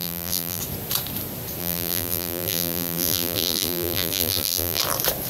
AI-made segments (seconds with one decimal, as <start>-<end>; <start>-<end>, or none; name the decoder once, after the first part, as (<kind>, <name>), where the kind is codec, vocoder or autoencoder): 0.0-0.6 (vocoder, BigVGAN v2); 1.6-4.8